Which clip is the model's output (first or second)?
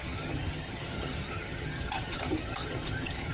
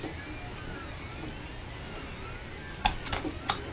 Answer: first